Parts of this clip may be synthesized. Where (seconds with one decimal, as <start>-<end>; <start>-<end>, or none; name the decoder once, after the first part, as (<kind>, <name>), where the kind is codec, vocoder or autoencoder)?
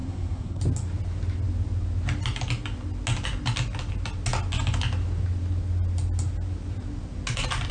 0.0-0.6 (codec, SNAC)